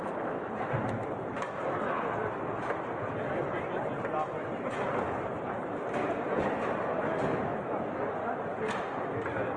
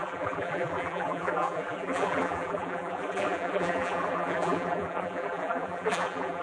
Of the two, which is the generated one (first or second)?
second